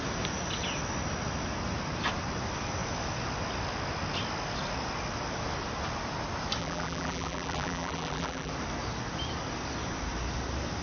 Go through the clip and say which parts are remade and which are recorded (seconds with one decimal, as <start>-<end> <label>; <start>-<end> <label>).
0.0-6.6 recorded; 6.6-8.5 remade; 8.5-10.8 recorded